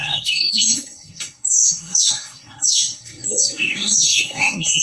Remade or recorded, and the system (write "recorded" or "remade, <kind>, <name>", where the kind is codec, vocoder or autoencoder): remade, codec, SNAC